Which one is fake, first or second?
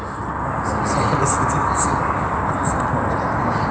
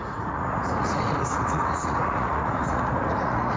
second